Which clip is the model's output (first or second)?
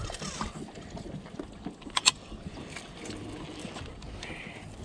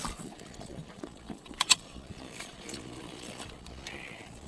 second